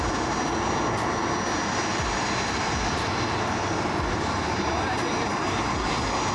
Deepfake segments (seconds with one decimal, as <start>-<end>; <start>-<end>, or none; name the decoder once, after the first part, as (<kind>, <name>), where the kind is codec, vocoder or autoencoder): none